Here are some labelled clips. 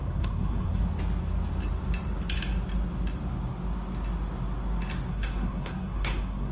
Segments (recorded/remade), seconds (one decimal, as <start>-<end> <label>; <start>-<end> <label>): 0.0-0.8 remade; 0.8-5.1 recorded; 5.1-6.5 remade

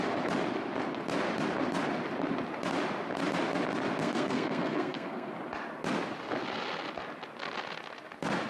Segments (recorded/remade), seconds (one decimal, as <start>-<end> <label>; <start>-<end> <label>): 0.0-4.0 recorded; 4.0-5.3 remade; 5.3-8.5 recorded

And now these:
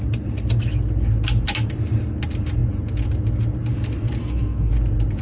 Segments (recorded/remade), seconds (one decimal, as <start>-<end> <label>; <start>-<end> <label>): 0.0-4.2 recorded; 4.2-4.7 remade; 4.7-5.2 recorded

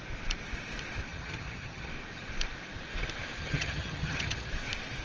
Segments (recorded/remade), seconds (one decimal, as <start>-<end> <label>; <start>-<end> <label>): 0.0-1.1 recorded; 1.1-1.9 remade; 1.9-3.4 recorded; 3.4-4.5 remade; 4.5-5.0 recorded

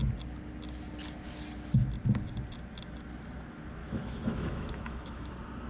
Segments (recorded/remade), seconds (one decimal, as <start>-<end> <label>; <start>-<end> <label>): 0.0-3.8 recorded; 3.8-5.3 remade; 5.3-5.7 recorded

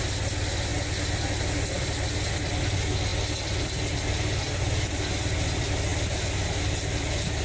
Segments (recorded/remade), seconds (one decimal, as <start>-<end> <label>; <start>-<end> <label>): 0.0-7.4 recorded

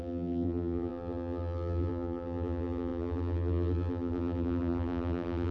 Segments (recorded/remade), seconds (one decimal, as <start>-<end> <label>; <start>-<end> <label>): 0.0-5.5 remade

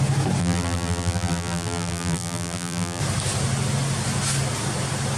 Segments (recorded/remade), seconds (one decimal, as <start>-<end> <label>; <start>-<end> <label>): 0.0-0.4 recorded; 0.4-3.0 remade; 3.0-5.2 recorded